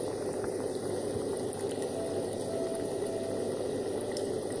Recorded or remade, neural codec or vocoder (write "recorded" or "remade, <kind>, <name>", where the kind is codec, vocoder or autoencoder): recorded